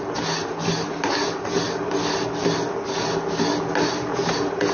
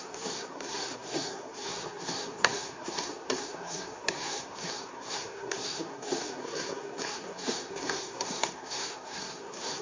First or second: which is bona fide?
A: first